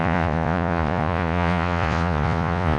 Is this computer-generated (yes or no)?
yes